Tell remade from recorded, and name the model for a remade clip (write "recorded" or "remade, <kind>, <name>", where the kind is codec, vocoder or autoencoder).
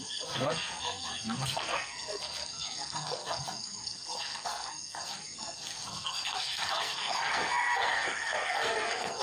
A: remade, codec, SNAC